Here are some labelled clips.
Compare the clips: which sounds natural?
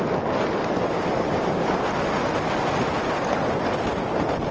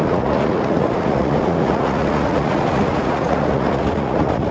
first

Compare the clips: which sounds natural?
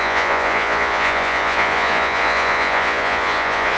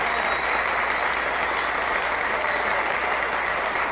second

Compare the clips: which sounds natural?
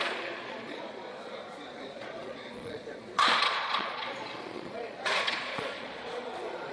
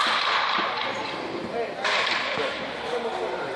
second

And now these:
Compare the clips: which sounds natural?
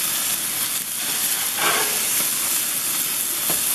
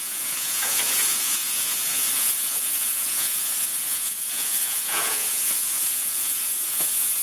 first